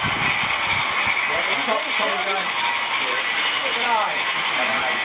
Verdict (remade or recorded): recorded